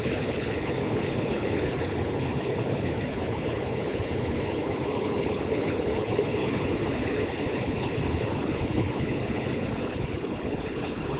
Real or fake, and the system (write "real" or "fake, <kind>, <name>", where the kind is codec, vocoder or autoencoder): fake, codec, HILCodec